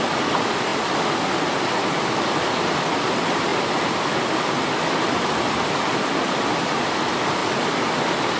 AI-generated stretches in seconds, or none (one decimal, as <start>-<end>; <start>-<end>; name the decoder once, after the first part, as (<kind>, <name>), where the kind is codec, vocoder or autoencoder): none